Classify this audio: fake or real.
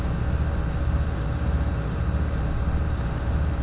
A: real